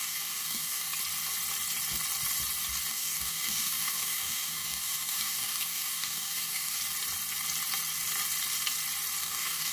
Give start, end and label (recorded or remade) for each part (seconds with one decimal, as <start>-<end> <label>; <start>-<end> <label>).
0.0-0.9 remade; 0.9-2.9 recorded; 2.9-6.8 remade; 6.8-9.2 recorded; 9.2-9.7 remade